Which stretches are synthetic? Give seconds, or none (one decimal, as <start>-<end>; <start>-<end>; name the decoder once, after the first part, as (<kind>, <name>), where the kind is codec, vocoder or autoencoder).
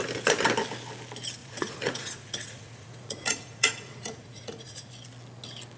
1.4-4.9 (vocoder, Vocos)